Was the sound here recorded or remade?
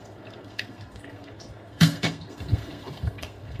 remade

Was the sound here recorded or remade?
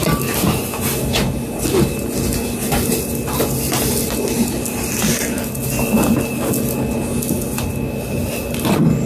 recorded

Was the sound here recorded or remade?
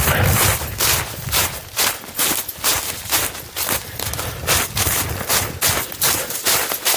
recorded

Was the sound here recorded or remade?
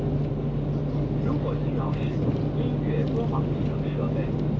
recorded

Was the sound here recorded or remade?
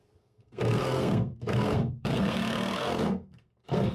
remade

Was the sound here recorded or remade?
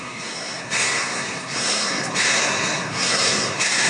remade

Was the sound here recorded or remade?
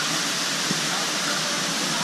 recorded